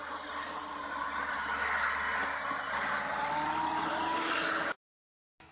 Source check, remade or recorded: recorded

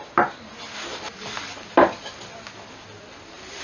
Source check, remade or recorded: recorded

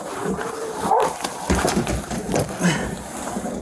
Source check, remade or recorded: recorded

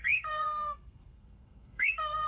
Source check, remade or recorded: remade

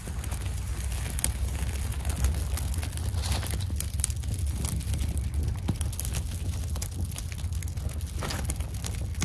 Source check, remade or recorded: recorded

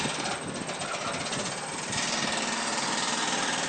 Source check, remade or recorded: recorded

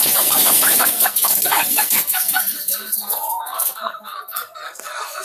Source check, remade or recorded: remade